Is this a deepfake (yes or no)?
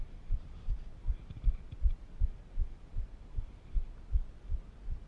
no